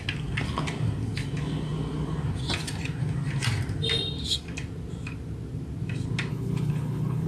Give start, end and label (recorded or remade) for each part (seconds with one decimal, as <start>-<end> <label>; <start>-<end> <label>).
0.0-6.3 recorded; 6.3-7.3 remade